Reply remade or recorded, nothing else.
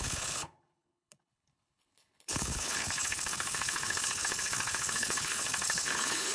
remade